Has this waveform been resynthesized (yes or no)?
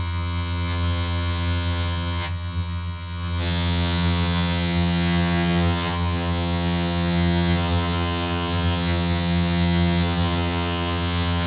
yes